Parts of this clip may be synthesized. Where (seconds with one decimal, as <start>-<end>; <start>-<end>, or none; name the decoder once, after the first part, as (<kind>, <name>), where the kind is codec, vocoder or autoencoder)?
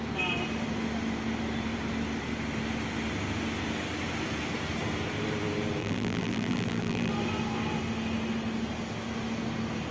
5.8-7.1 (vocoder, BigVGAN v2)